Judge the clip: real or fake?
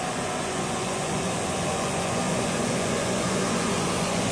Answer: fake